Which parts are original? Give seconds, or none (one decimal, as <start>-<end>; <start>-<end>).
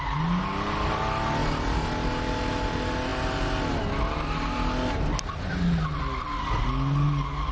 0.0-7.5